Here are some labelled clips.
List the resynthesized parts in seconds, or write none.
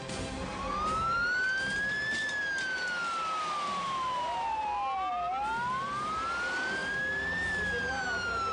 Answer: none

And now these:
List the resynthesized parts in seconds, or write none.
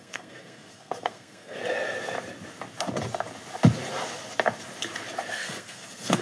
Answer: 0.0-1.6 (codec, SNAC); 5.3-6.2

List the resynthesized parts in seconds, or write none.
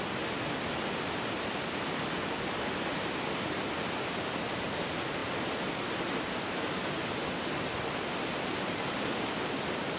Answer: none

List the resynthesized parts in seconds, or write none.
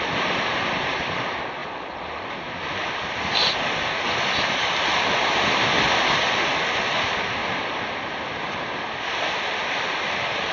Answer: none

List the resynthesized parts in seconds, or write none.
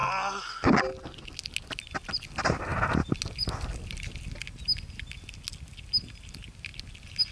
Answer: none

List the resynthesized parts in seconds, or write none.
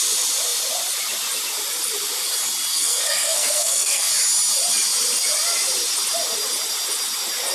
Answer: 2.7-4.1 (codec, SNAC)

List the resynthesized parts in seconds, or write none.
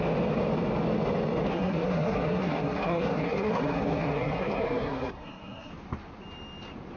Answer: 1.5-5.7 (codec, SNAC)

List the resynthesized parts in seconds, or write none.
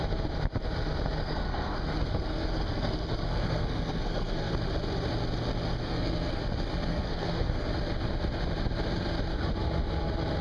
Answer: 1.2-4.5 (codec, SNAC); 5.8-6.4; 6.9-7.7